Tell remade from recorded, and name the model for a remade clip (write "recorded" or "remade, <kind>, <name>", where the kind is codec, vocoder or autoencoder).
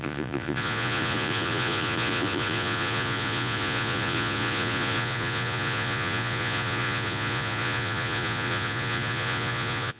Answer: remade, vocoder, Vocos